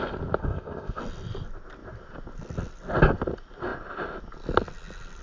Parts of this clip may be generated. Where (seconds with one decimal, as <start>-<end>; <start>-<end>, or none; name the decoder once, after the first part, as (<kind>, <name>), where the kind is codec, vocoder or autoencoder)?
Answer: 0.4-1.0 (codec, ZipCodec)

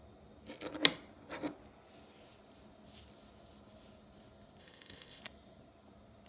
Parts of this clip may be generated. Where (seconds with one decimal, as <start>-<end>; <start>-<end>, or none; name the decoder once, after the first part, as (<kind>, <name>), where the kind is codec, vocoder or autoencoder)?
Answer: 4.6-5.2 (codec, ZipCodec)

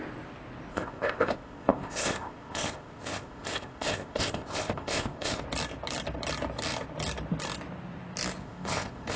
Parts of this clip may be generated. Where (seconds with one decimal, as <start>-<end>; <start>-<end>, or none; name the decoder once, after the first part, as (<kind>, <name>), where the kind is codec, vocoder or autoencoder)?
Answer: 0.7-5.4 (codec, ZipCodec); 8.4-9.2